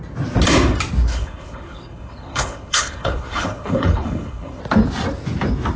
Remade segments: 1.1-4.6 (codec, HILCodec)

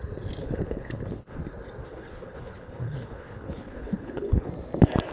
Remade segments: 0.4-1.4 (codec, HILCodec); 1.8-4.5